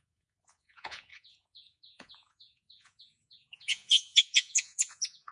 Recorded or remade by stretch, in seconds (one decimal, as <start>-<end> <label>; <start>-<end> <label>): 0.0-5.3 remade